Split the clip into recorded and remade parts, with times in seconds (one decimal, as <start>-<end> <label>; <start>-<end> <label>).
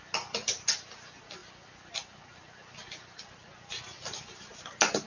0.0-5.1 recorded